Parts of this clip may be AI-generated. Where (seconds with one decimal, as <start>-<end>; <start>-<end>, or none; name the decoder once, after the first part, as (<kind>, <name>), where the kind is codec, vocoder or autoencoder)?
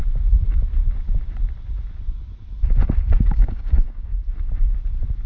3.2-4.1 (codec, DAC)